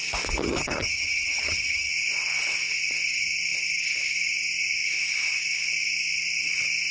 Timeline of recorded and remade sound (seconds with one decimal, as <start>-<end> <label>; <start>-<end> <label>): 0.0-0.4 recorded; 0.4-1.9 remade; 1.9-6.9 recorded